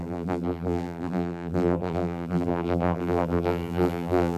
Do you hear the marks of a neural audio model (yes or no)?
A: yes